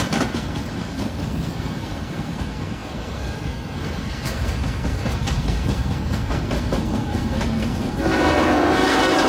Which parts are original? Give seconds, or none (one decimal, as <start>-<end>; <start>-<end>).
none